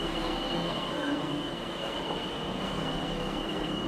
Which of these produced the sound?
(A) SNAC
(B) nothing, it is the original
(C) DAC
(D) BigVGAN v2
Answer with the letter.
A